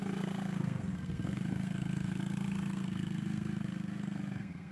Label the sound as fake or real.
fake